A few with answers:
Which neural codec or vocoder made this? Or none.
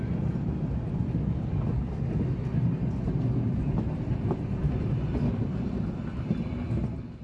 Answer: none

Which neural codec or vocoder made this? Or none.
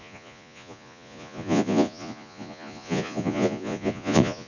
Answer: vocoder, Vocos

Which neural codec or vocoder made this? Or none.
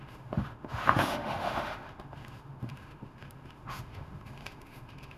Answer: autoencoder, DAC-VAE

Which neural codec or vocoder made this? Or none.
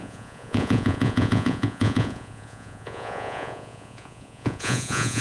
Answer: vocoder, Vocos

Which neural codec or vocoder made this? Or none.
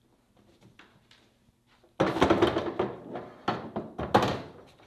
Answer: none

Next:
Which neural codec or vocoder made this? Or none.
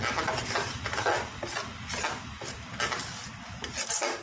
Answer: none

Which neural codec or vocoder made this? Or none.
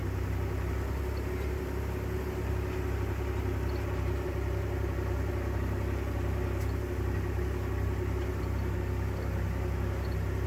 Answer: none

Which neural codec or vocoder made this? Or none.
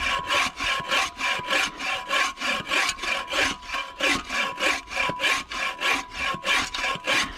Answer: none